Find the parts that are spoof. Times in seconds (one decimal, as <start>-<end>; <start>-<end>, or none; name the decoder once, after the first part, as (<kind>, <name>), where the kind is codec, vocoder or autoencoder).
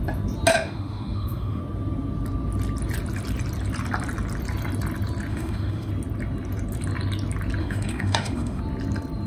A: 0.5-1.6 (autoencoder, DAC-VAE); 5.3-5.9; 7.6-8.6